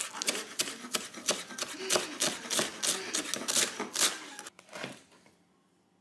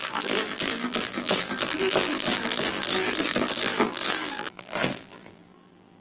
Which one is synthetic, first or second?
second